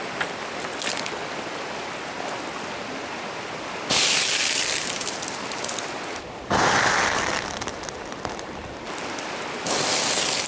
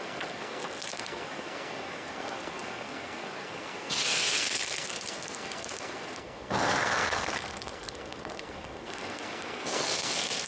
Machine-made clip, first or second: second